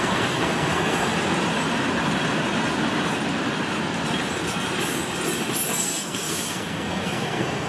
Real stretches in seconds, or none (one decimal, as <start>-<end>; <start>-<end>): 1.1-5.7